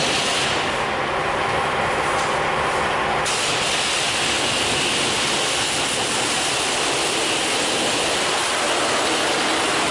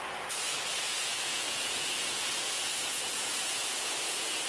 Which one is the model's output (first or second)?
second